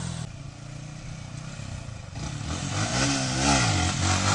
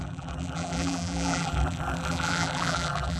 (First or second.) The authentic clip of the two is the first